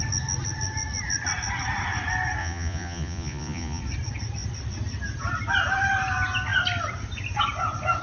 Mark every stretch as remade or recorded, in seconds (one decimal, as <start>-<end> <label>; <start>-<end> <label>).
0.0-2.4 recorded; 2.4-3.8 remade; 3.8-8.0 recorded